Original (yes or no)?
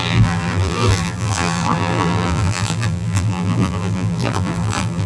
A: no